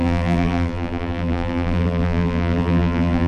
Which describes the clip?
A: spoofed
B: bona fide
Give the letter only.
A